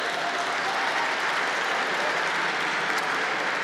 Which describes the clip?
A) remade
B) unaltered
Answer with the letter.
B